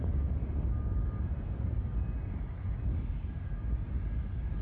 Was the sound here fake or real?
real